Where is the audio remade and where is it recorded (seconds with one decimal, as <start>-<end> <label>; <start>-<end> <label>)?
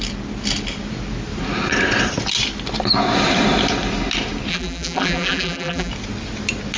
0.0-4.5 recorded; 4.5-5.9 remade; 5.9-6.8 recorded